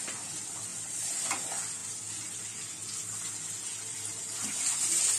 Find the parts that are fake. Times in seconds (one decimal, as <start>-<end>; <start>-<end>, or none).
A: none